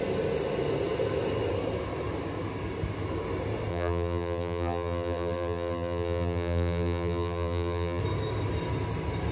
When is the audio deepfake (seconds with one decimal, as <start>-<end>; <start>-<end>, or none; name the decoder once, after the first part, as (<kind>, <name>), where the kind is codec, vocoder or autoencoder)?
3.7-8.0 (vocoder, BigVGAN v2)